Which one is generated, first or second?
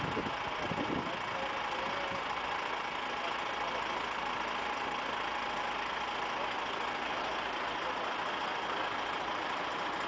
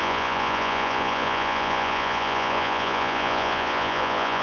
second